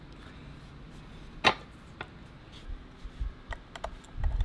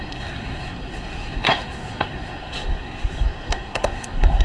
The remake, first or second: second